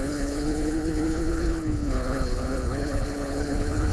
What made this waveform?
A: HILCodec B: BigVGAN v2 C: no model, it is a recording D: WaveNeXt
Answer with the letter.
A